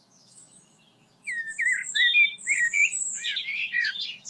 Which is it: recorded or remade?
remade